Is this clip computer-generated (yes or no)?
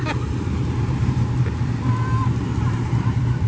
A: yes